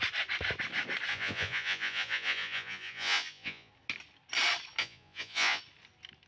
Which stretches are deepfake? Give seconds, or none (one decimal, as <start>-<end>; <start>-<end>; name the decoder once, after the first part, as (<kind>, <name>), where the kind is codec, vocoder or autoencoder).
1.1-3.7 (vocoder, Vocos); 4.8-5.6